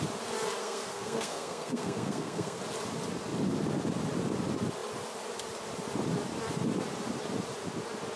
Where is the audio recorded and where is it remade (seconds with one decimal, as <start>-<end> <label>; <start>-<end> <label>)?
0.0-0.6 recorded; 0.6-2.6 remade; 2.6-8.2 recorded